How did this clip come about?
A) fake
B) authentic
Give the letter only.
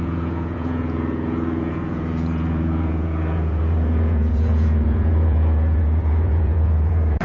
A